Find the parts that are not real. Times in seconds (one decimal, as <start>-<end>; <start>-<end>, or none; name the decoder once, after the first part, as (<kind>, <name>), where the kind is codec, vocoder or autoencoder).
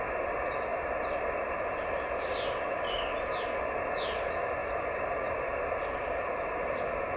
0.7-3.8 (vocoder, BigVGAN v2); 4.6-7.2